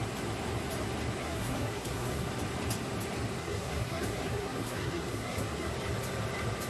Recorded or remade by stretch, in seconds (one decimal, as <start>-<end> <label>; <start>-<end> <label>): 0.0-1.2 recorded; 1.2-2.3 remade; 2.3-3.4 recorded; 3.4-5.7 remade; 5.7-6.7 recorded